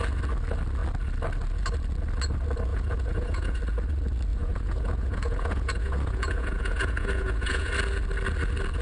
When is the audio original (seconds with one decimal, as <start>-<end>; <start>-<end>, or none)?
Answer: 0.0-2.7; 3.6-4.3; 7.7-8.8